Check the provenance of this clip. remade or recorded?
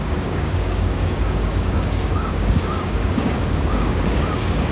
remade